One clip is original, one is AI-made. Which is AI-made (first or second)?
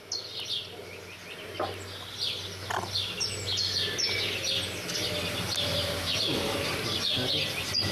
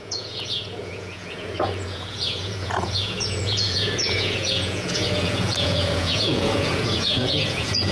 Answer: second